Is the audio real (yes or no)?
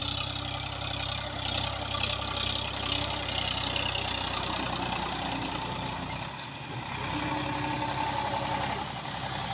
yes